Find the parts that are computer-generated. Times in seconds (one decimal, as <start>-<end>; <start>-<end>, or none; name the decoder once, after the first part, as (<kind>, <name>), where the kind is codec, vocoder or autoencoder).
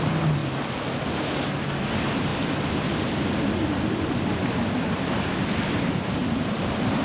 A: none